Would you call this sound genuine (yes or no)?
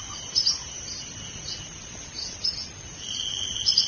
yes